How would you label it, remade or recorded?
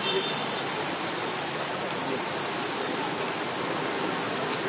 recorded